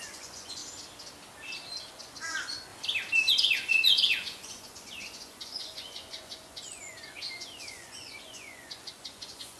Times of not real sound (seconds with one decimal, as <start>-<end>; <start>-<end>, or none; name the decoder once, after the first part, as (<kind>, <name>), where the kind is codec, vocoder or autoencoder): 0.0-0.6 (vocoder, Vocos); 1.9-2.7; 3.3-9.6